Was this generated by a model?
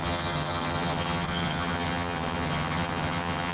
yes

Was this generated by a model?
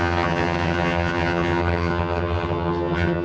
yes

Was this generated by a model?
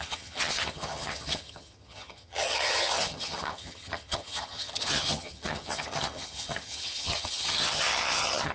yes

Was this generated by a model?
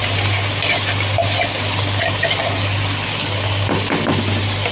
no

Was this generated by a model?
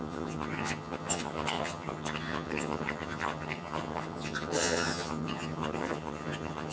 yes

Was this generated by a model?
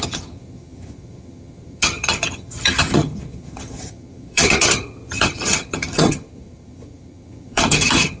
yes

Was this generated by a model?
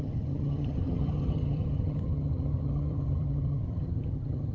yes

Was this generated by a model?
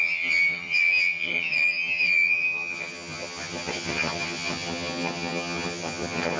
yes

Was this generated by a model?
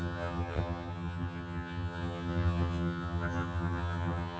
yes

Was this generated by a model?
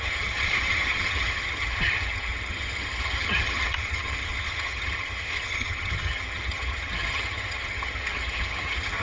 yes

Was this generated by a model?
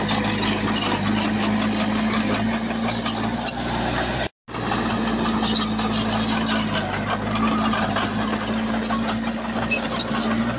no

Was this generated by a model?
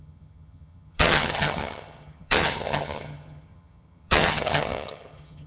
yes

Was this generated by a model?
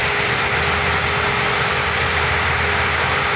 no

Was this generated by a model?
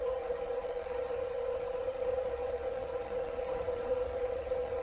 yes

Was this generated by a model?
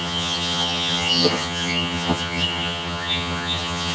yes